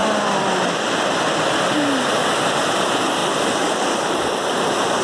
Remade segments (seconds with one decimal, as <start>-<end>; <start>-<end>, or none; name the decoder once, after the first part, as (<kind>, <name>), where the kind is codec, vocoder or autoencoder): none